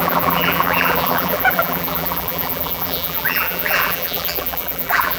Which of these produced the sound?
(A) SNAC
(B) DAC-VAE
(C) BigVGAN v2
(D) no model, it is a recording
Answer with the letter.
C